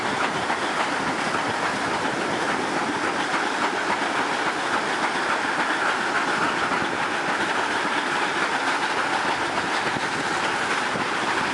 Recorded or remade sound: recorded